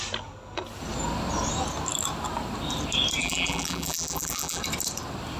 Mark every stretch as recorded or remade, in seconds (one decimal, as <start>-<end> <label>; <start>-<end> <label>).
0.0-3.2 recorded; 3.2-4.6 remade; 4.6-5.4 recorded